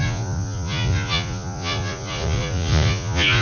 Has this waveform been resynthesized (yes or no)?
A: yes